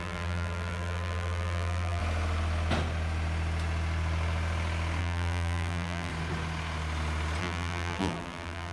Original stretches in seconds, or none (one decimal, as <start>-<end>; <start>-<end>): 2.0-5.0; 6.1-7.4